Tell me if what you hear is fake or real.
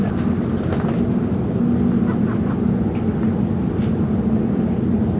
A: real